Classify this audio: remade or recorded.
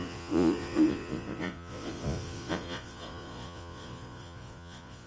remade